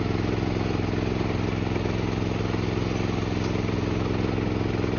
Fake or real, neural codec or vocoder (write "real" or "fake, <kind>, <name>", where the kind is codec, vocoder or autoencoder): real